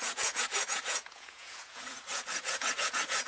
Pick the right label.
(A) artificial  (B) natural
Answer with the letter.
A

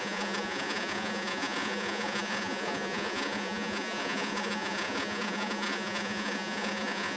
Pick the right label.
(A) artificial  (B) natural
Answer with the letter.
A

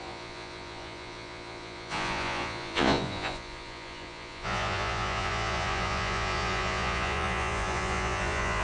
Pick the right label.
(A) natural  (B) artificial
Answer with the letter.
B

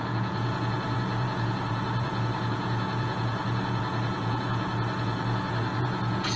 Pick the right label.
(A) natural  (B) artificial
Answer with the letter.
B